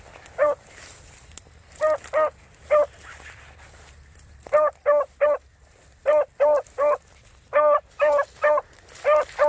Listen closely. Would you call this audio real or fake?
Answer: real